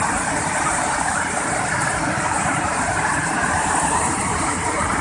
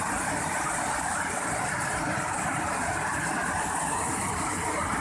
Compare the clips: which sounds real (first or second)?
second